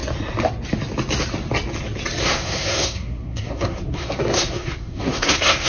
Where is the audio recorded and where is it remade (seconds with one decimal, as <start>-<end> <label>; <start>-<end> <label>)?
0.0-2.2 recorded; 2.2-5.7 remade